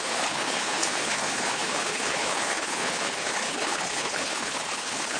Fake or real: fake